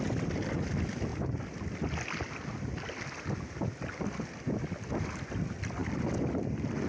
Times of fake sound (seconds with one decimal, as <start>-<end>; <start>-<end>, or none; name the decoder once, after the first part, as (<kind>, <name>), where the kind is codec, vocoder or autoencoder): none